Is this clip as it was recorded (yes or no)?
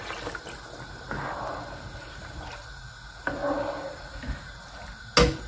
yes